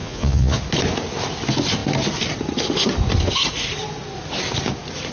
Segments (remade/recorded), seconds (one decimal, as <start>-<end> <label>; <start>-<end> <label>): 0.0-0.6 remade; 0.6-5.1 recorded